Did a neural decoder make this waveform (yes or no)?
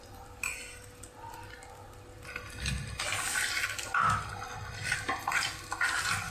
no